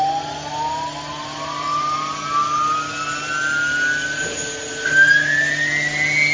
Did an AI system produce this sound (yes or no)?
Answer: no